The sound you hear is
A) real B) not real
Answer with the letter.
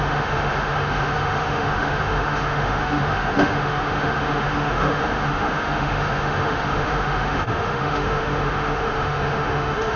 B